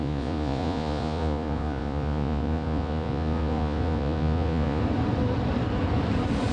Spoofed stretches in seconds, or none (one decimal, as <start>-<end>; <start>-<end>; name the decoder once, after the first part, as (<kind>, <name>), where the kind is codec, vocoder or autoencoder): 0.0-4.8 (vocoder, Vocos)